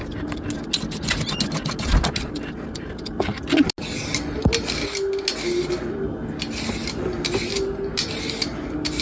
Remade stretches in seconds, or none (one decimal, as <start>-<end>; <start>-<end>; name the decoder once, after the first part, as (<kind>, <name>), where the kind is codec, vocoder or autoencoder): none